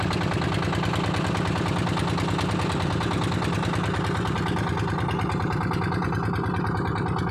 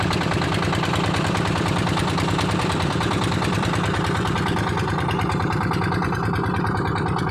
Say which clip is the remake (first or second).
second